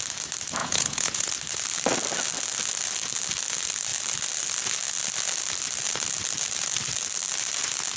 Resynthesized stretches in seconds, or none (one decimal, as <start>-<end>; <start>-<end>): 0.6-1.3